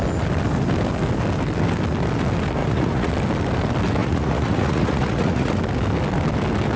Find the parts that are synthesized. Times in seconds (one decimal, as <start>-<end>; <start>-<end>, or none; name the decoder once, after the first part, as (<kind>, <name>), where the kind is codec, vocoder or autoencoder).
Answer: 2.6-3.1 (vocoder, Vocos); 4.0-5.6